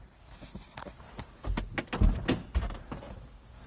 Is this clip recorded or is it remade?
recorded